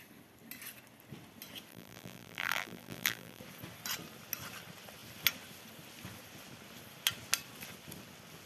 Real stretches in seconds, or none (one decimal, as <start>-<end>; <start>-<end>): 0.0-1.7; 3.4-8.5